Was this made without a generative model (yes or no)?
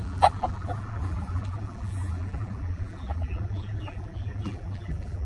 no